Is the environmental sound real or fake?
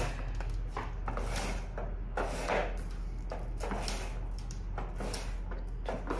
real